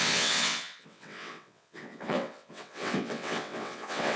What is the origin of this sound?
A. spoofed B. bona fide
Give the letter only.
A